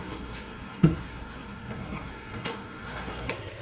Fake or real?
fake